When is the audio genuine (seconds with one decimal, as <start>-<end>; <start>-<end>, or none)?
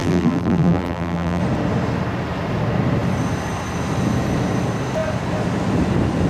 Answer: 1.4-6.3